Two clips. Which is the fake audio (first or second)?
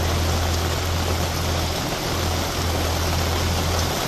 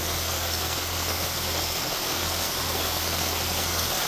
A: second